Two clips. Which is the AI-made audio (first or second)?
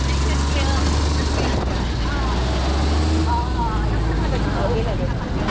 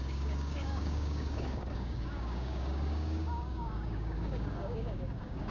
second